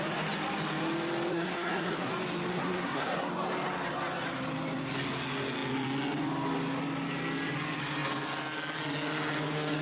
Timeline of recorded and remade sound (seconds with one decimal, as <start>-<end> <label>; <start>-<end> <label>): 0.0-1.3 recorded; 1.3-2.1 remade; 2.1-2.5 recorded; 2.5-3.3 remade; 3.3-9.8 recorded